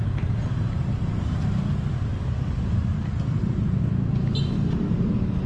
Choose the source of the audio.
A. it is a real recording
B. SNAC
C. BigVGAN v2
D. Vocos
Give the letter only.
C